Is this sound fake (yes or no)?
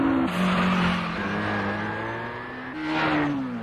no